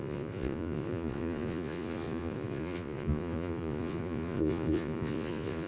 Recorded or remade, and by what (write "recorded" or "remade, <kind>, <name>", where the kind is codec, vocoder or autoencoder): remade, vocoder, Vocos